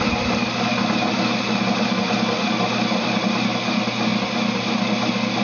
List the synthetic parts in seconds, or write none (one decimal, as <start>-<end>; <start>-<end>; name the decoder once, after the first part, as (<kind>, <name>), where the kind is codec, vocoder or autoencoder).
none